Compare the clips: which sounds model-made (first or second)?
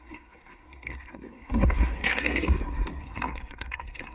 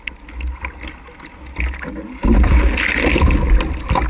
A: first